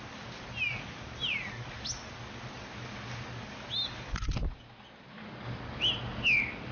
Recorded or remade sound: recorded